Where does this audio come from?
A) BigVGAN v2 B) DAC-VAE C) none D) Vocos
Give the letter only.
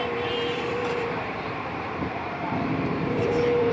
A